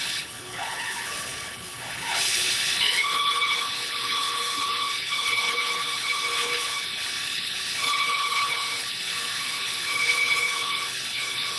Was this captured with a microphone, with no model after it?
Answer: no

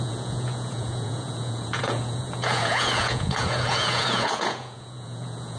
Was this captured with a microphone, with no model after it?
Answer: no